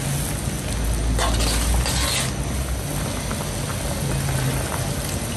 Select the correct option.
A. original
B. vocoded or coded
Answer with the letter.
A